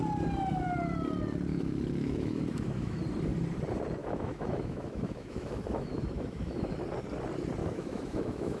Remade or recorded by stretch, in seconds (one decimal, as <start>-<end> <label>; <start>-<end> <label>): 0.0-1.5 recorded; 1.5-3.0 remade; 3.0-4.0 recorded; 4.0-6.7 remade; 6.7-7.6 recorded; 7.6-8.6 remade